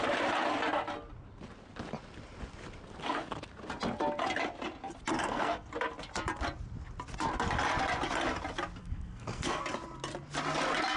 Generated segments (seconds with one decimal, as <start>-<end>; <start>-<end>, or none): 5.2-5.7; 8.8-9.6